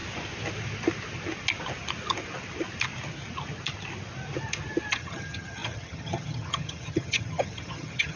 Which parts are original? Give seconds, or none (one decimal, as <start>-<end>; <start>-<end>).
0.0-4.9